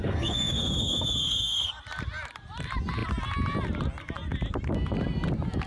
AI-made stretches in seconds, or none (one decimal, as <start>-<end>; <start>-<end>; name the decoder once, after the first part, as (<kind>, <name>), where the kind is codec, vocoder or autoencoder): 0.0-1.7 (codec, SNAC)